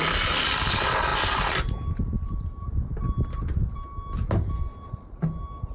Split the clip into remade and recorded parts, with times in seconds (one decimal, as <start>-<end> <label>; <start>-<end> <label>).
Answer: 0.0-5.7 recorded